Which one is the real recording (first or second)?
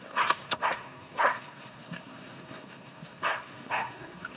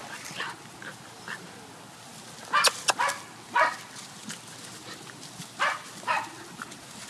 second